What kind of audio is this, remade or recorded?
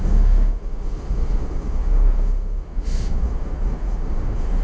remade